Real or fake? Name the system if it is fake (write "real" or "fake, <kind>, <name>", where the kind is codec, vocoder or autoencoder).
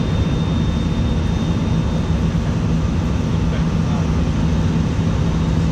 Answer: real